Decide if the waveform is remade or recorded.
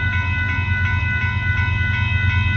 recorded